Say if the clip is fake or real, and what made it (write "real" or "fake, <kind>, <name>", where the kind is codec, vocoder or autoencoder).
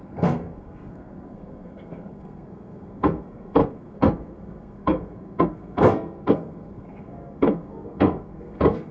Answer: fake, codec, SNAC